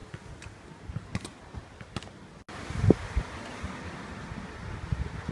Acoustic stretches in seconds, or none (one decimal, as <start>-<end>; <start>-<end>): 0.0-5.3